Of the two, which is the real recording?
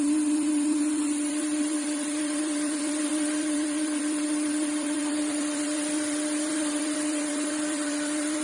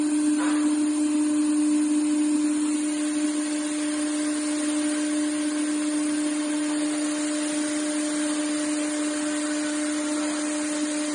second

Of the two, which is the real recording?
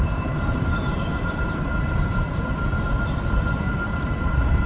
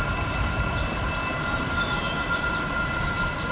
second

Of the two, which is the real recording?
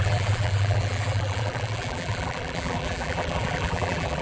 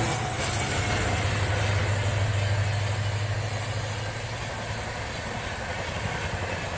second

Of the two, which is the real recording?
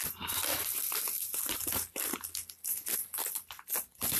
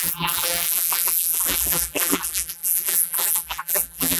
first